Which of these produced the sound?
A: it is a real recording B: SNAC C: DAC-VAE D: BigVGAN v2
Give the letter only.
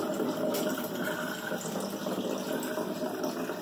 A